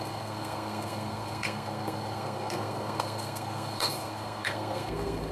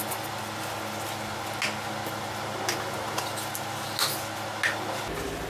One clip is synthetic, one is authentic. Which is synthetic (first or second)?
first